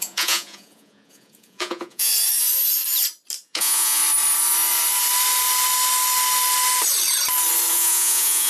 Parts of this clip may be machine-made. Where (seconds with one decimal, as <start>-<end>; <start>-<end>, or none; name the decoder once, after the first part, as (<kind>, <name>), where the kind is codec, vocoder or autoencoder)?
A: 0.0-2.1 (vocoder, Vocos); 3.4-4.0; 7.7-8.5